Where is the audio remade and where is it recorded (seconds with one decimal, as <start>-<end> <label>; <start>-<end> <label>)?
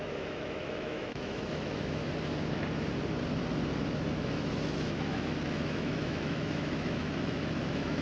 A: 0.0-2.0 remade; 2.0-4.2 recorded; 4.2-8.0 remade